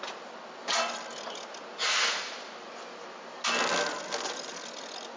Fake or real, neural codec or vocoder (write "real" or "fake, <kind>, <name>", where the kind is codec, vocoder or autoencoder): real